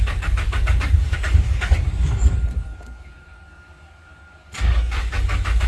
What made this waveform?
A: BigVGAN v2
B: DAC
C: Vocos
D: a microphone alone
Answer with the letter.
B